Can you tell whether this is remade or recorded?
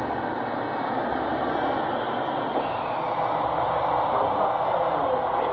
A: recorded